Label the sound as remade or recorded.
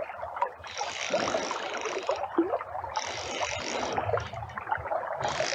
recorded